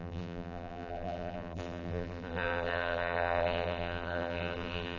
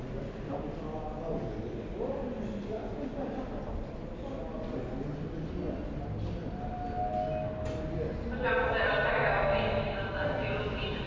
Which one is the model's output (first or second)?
first